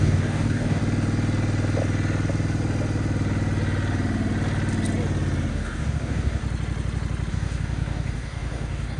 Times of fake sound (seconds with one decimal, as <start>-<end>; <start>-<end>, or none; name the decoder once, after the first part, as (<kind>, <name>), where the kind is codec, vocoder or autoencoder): 0.0-0.8 (codec, DAC); 5.5-6.4; 7.3-9.0